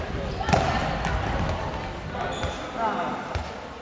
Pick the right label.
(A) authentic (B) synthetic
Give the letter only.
A